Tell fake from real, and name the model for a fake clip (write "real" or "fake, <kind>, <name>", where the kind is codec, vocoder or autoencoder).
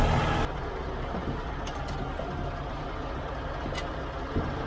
real